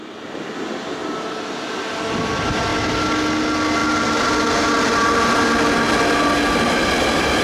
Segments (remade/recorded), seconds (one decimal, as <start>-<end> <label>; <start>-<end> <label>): 0.0-7.4 recorded